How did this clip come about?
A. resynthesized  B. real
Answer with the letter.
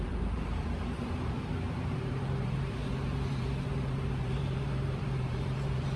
A